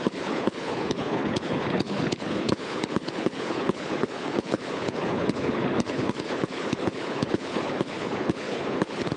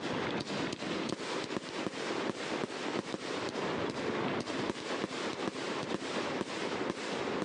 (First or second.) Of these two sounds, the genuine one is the second